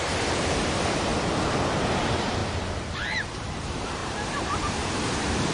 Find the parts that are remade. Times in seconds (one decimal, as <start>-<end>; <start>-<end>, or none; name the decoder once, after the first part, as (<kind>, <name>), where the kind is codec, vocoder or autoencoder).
0.0-1.1 (vocoder, BigVGAN v2); 1.8-2.4; 3.3-5.5